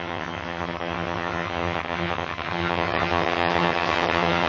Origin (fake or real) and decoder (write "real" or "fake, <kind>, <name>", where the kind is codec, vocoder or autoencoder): fake, vocoder, HiFi-GAN